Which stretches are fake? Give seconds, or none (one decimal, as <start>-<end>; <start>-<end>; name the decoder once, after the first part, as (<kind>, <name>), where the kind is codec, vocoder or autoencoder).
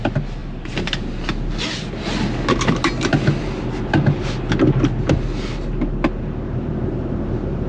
none